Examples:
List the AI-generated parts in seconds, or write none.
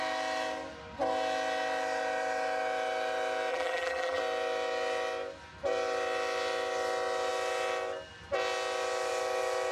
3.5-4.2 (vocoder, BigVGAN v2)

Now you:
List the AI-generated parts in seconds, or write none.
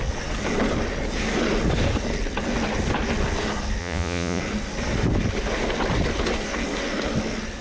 3.8-4.4 (vocoder, Vocos)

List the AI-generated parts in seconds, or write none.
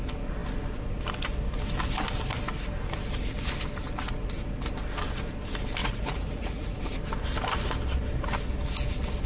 5.8-6.8 (vocoder, Vocos)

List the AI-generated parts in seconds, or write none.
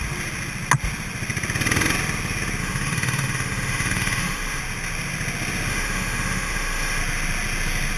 2.6-4.6 (autoencoder, DAC-VAE); 5.7-7.0